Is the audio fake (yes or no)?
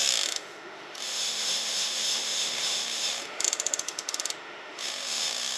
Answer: yes